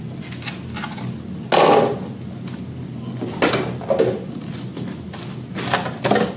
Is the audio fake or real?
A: real